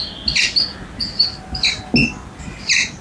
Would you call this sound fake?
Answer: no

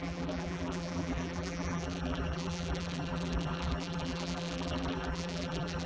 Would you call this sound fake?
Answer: yes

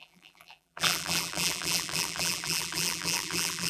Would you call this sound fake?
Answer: yes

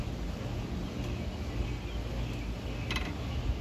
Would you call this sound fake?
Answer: no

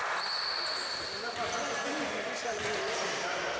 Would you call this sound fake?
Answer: no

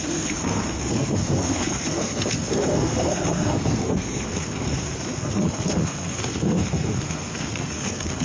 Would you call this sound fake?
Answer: yes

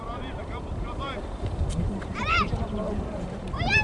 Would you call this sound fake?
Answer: yes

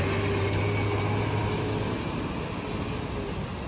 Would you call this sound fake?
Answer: no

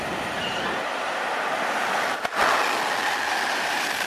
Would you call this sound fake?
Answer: no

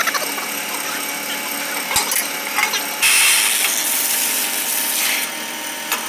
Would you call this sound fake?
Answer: no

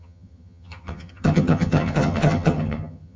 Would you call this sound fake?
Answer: yes